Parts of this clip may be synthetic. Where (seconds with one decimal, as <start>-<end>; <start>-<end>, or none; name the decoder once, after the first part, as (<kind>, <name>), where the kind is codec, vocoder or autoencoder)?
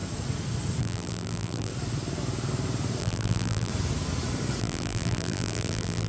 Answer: 0.8-1.7 (vocoder, BigVGAN v2); 3.0-3.7; 4.6-6.1